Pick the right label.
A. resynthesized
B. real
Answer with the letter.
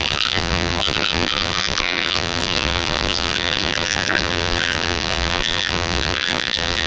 A